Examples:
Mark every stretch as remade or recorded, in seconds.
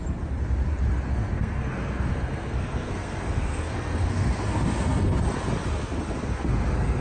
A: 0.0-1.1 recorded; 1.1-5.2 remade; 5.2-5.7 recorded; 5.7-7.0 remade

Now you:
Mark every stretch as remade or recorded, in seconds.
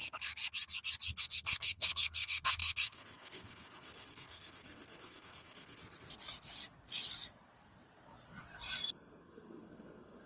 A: 0.0-1.2 recorded; 1.2-5.8 remade; 5.8-8.9 recorded; 8.9-10.3 remade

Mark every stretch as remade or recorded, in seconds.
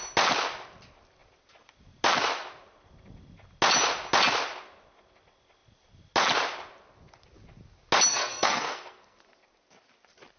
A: 0.0-8.1 recorded; 8.1-9.2 remade; 9.2-10.4 recorded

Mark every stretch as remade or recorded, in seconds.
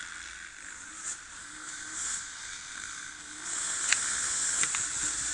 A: 0.0-1.4 recorded; 1.4-4.6 remade; 4.6-5.3 recorded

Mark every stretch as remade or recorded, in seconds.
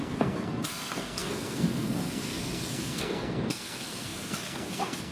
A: 0.0-5.1 remade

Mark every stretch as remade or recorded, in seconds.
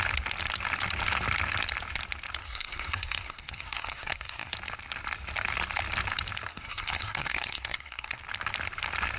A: 0.0-2.4 recorded; 2.4-4.5 remade; 4.5-6.5 recorded; 6.5-8.2 remade; 8.2-9.2 recorded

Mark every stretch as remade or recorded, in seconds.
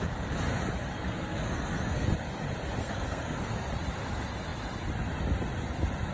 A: 0.0-0.9 recorded; 0.9-2.1 remade; 2.1-2.8 recorded; 2.8-3.7 remade; 3.7-6.1 recorded